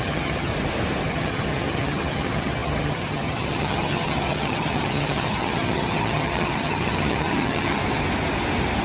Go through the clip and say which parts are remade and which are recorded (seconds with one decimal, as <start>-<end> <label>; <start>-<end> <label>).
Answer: 0.0-0.5 remade; 0.5-1.1 recorded; 1.1-7.8 remade; 7.8-8.8 recorded